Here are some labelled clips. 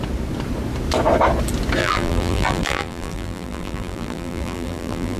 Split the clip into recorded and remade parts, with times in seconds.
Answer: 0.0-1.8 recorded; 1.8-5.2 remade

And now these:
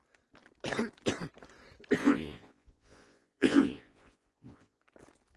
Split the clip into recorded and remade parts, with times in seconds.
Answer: 0.0-2.0 recorded; 2.0-4.8 remade; 4.8-5.4 recorded

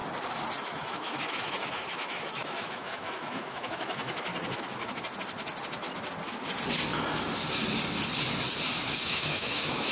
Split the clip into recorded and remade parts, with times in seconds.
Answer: 0.0-0.6 recorded; 0.6-4.3 remade; 4.3-9.0 recorded; 9.0-9.9 remade